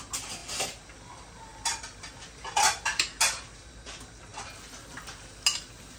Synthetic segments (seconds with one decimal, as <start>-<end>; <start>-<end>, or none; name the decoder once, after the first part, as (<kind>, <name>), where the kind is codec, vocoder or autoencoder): none